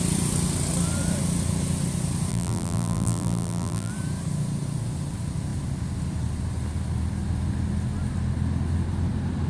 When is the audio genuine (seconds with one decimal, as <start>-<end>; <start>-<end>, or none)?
0.0-2.3; 3.9-9.5